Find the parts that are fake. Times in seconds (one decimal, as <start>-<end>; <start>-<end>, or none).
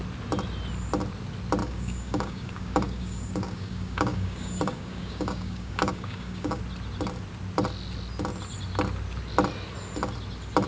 1.6-6.6